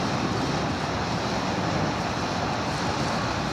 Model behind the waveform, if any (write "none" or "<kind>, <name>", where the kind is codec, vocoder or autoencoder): none